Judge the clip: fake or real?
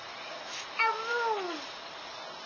real